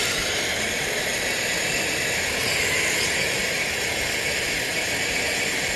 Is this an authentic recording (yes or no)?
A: yes